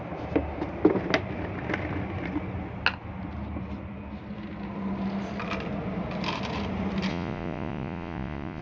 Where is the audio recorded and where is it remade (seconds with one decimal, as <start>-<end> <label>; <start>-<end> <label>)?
0.0-7.1 recorded; 7.1-8.6 remade